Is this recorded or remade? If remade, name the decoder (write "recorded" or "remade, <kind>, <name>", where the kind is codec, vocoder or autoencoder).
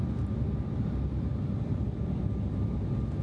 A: recorded